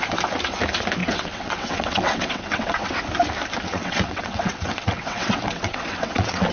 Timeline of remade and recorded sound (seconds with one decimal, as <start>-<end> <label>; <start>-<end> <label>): 0.0-1.0 recorded; 1.0-3.0 remade; 3.0-3.7 recorded; 3.7-6.5 remade